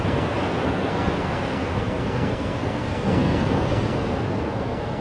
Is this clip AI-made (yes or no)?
yes